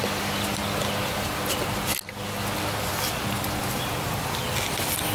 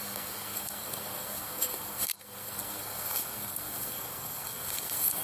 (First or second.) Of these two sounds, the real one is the first